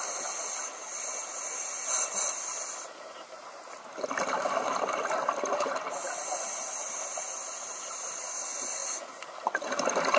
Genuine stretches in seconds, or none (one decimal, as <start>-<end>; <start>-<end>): 0.0-10.2